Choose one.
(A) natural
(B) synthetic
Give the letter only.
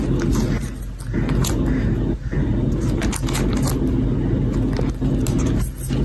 A